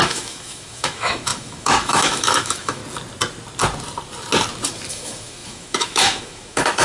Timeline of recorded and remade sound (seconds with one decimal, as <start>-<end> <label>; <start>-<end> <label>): 0.0-2.8 remade; 2.8-4.9 recorded; 4.9-6.8 remade